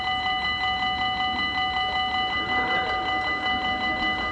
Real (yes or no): yes